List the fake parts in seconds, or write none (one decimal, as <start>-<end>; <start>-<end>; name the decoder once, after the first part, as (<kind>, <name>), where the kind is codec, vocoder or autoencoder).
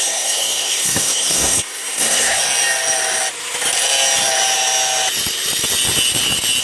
0.0-2.4 (codec, SNAC)